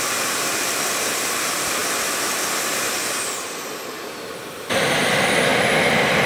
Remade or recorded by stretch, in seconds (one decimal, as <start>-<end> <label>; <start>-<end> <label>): 0.0-1.8 remade; 1.8-2.6 recorded; 2.6-5.5 remade; 5.5-6.3 recorded